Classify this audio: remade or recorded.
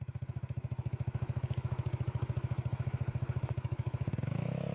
remade